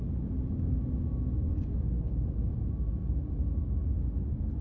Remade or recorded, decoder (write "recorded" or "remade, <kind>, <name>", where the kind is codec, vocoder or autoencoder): recorded